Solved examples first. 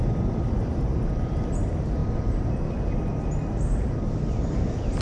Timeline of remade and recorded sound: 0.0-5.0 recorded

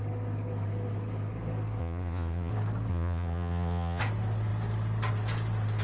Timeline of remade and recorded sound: 0.0-1.8 recorded; 1.8-2.5 remade; 2.5-2.9 recorded; 2.9-4.0 remade; 4.0-5.8 recorded

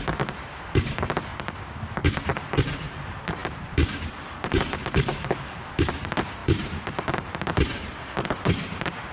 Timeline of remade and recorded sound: 0.0-1.3 remade; 1.3-2.1 recorded; 2.1-9.1 remade

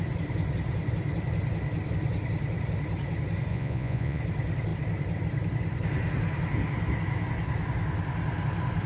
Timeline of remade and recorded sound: 0.0-3.5 recorded; 3.5-4.2 remade; 4.2-8.9 recorded

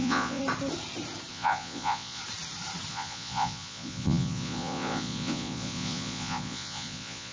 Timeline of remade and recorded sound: 0.0-0.4 remade; 0.4-1.3 recorded; 1.3-2.2 remade; 2.2-2.9 recorded; 2.9-7.3 remade